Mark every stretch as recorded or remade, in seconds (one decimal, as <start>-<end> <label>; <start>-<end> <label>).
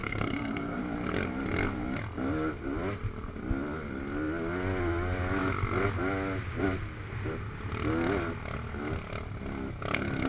0.0-0.8 remade; 0.8-10.3 recorded